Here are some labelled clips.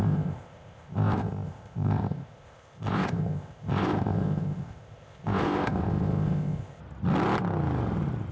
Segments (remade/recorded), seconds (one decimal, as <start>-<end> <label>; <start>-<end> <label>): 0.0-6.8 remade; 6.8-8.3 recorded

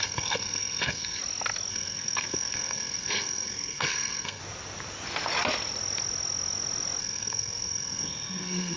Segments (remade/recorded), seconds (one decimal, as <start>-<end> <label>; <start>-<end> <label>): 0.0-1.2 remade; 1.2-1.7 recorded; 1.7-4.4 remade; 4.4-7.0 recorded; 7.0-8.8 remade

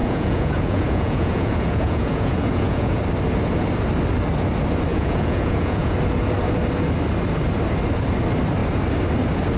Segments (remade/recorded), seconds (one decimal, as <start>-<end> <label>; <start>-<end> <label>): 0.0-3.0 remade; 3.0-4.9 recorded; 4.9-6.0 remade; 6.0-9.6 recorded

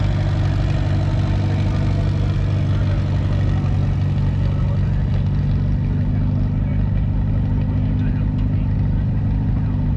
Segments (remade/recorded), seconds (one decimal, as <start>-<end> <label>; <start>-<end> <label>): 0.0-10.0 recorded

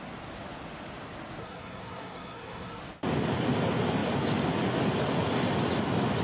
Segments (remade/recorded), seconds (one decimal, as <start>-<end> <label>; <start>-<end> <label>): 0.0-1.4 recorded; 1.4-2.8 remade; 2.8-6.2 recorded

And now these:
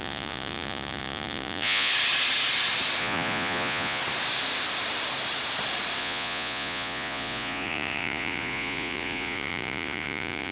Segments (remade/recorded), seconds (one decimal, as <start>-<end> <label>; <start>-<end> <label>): 0.0-1.9 remade; 1.9-3.0 recorded; 3.0-4.0 remade; 4.0-6.0 recorded; 6.0-10.5 remade

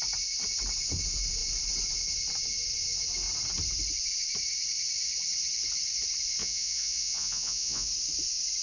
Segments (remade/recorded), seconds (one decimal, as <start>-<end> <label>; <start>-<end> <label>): 0.0-6.4 recorded; 6.4-7.9 remade; 7.9-8.6 recorded